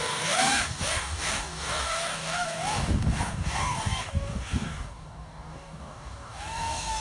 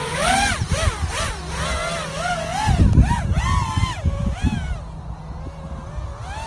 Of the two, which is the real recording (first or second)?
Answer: second